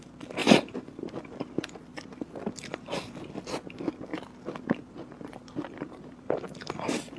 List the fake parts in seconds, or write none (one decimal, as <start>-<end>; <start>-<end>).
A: 0.4-3.2; 4.1-7.2